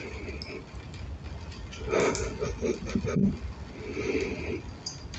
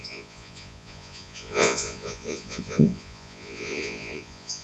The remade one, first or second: second